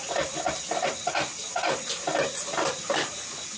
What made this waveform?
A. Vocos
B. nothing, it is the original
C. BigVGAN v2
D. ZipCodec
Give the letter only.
B